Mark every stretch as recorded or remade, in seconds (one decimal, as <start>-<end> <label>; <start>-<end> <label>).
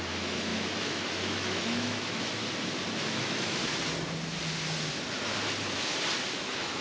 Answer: 0.0-2.4 remade; 2.4-3.0 recorded; 3.0-3.6 remade; 3.6-6.3 recorded; 6.3-6.8 remade